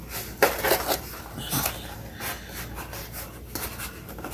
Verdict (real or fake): real